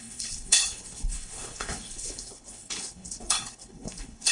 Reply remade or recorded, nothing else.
remade